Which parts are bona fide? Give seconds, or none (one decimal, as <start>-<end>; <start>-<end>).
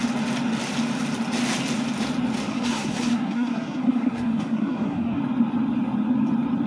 0.0-2.5; 5.2-6.7